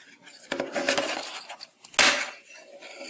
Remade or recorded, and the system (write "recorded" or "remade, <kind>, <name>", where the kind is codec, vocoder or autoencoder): recorded